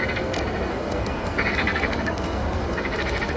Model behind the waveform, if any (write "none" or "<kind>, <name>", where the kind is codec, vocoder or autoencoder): codec, SNAC